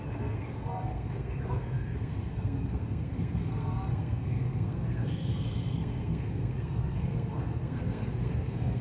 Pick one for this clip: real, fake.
fake